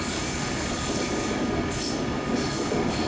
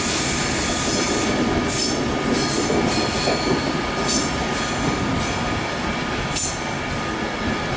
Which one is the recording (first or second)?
second